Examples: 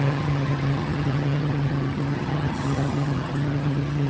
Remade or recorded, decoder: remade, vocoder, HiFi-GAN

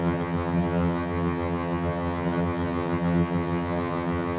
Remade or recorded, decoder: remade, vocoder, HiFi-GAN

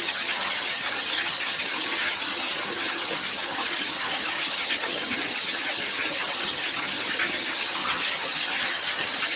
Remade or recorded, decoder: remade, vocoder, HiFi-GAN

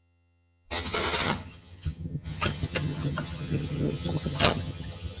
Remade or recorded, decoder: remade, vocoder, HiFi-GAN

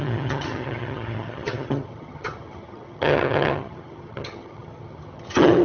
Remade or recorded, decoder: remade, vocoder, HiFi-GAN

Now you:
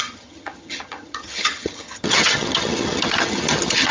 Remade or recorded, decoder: remade, vocoder, HiFi-GAN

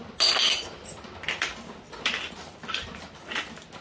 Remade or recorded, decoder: recorded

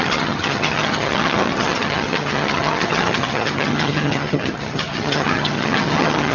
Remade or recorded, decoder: remade, vocoder, HiFi-GAN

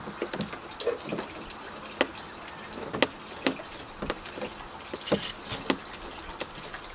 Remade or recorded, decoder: recorded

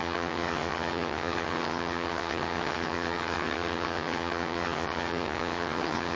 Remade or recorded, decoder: remade, vocoder, HiFi-GAN